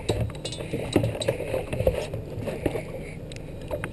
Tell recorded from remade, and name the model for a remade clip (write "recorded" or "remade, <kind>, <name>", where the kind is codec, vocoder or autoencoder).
recorded